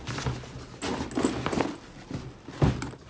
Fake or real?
real